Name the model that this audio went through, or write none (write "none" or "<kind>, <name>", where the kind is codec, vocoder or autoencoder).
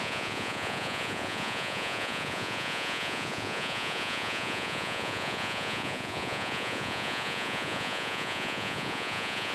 vocoder, Vocos